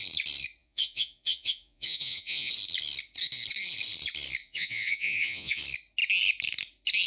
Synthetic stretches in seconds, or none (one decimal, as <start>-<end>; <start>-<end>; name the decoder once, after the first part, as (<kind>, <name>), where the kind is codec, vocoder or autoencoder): 0.6-2.5 (vocoder, Vocos); 4.4-5.6